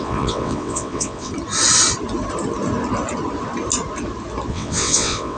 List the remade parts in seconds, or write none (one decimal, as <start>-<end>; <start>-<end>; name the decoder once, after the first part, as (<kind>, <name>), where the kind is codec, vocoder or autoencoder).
0.0-1.3 (vocoder, WaveNeXt); 4.5-5.4